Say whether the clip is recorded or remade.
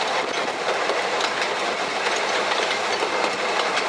recorded